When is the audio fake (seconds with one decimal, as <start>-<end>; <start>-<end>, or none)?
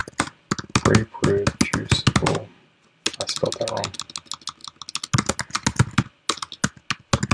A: none